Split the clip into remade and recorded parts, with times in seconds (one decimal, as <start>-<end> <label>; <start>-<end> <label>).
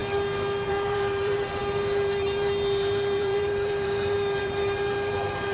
0.0-0.7 recorded; 0.7-5.5 remade